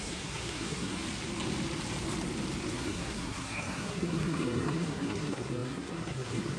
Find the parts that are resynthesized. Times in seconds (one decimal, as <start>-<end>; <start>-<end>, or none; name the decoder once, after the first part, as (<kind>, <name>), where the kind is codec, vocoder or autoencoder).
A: 0.0-1.0 (codec, SNAC); 2.7-6.6